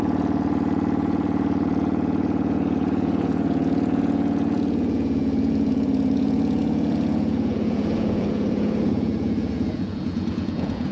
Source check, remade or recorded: remade